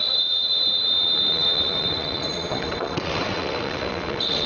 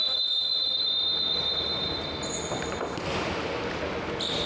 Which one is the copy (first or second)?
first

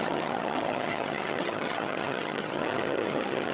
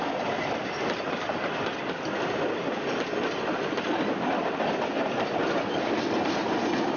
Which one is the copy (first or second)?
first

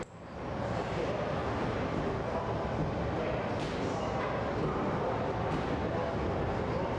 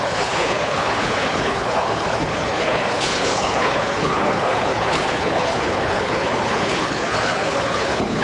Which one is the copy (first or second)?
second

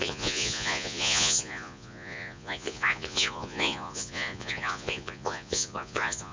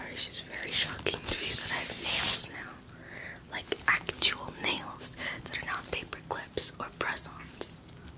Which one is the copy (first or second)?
first